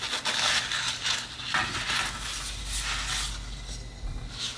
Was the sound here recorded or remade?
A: recorded